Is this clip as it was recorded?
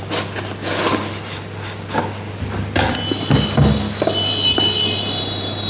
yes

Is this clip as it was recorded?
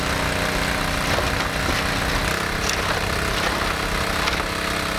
yes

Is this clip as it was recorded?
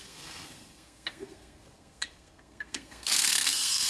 no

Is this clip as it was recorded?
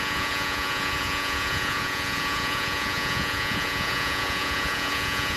no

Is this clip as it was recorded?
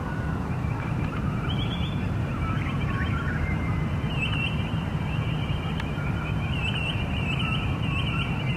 no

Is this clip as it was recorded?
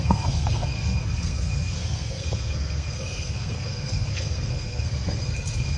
no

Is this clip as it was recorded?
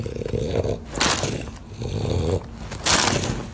yes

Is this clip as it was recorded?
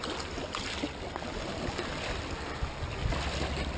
yes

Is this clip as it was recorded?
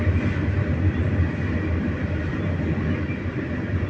yes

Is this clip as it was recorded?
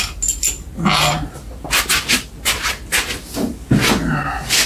yes